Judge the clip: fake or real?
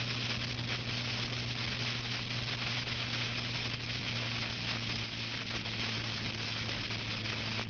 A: real